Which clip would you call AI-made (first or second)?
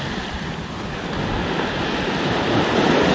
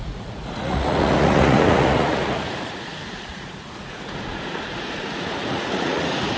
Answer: second